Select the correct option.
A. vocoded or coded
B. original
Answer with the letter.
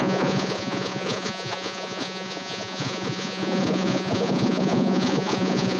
A